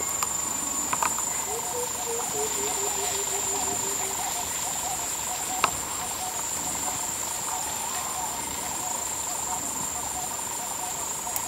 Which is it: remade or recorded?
recorded